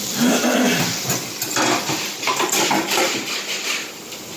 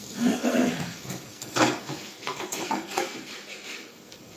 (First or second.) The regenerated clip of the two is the second